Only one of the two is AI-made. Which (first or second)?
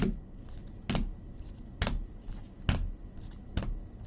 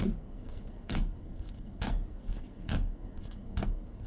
second